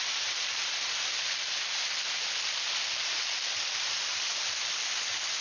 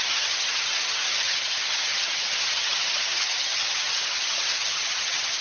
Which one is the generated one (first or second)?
second